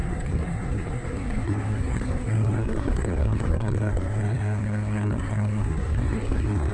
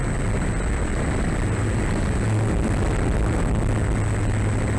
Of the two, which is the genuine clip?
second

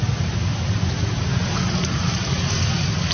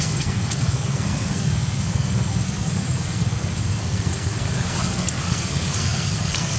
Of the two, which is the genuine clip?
first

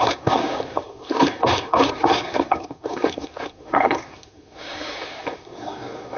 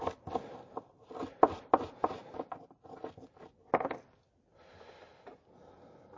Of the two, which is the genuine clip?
second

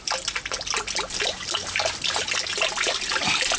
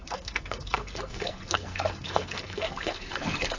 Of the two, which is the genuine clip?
first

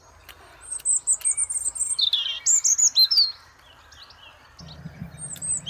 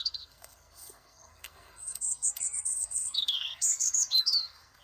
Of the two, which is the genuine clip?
first